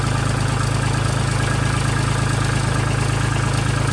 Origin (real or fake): real